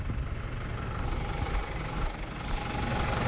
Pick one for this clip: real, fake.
real